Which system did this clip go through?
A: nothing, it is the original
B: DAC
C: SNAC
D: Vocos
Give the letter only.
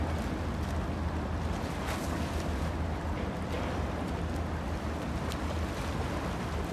A